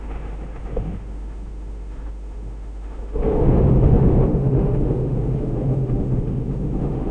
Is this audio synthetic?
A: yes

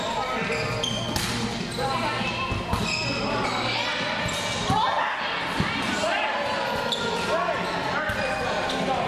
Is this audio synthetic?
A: no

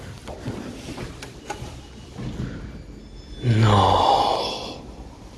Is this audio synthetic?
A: no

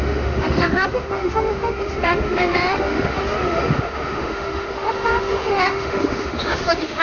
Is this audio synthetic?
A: yes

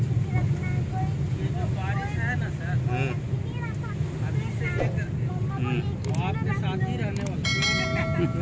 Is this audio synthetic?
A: no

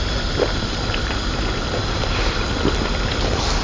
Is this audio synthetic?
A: no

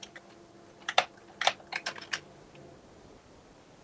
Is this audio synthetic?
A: no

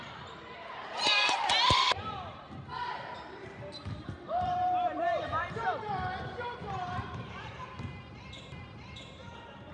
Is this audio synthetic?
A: yes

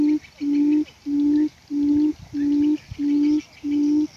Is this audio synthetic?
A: no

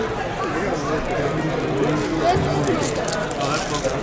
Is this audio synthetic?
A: no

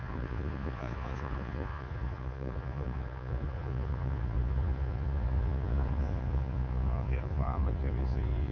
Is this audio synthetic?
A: yes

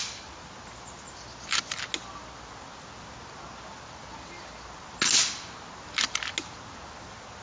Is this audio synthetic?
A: no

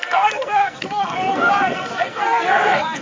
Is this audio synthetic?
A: yes